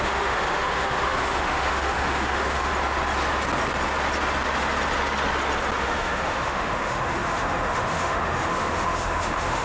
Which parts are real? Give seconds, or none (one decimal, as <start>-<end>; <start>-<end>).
2.7-5.8